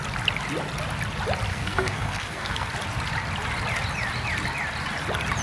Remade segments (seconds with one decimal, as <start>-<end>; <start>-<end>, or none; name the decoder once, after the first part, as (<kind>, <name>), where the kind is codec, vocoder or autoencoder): 1.5-2.7 (codec, SNAC)